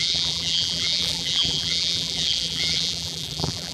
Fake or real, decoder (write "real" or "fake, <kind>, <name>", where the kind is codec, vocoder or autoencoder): fake, vocoder, BigVGAN v2